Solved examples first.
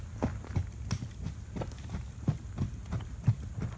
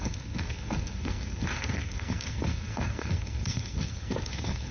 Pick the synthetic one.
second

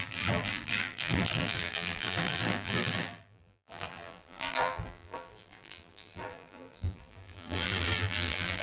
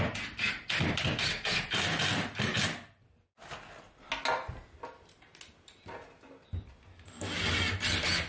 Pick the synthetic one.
first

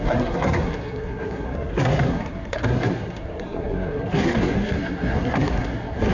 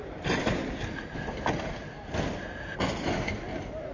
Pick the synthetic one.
first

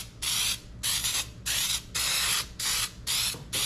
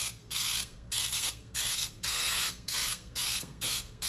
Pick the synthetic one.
second